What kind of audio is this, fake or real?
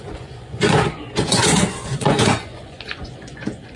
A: fake